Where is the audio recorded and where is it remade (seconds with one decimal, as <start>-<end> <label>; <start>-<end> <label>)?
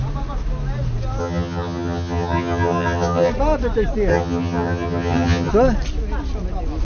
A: 0.0-1.2 recorded; 1.2-3.3 remade; 3.3-4.1 recorded; 4.1-5.5 remade; 5.5-6.8 recorded